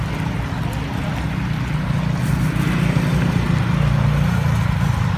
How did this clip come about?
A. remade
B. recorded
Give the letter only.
B